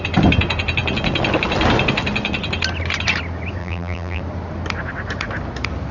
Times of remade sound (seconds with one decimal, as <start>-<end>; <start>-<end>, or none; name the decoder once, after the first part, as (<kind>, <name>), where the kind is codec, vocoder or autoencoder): 3.6-4.2 (vocoder, BigVGAN v2)